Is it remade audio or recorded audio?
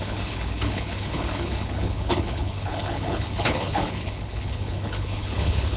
remade